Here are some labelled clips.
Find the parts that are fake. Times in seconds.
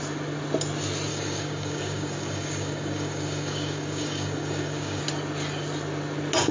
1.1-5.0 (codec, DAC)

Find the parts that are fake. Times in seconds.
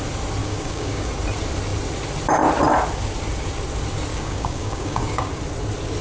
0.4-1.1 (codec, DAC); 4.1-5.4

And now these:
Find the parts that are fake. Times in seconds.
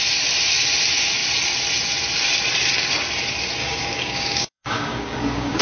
3.6-5.6 (codec, DAC)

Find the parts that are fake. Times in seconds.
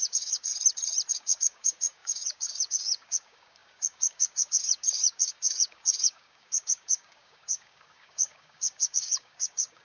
0.0-0.5 (codec, DAC); 1.1-9.8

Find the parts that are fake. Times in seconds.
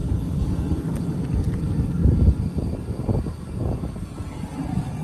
0.0-1.0 (codec, DAC)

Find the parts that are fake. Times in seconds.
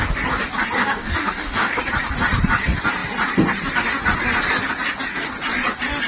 0.8-1.8 (codec, DAC)